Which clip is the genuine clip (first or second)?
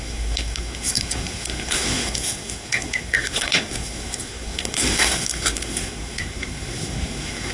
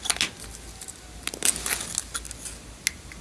second